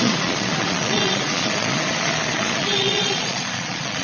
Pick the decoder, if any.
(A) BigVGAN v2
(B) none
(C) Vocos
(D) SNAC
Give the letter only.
C